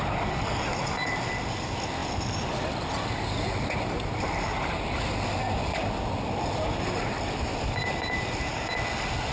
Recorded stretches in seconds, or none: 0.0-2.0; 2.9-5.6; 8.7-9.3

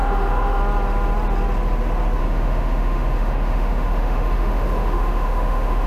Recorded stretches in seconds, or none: 0.6-2.2

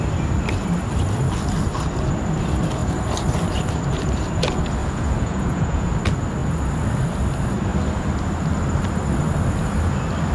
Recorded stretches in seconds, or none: 0.0-4.8; 5.9-10.3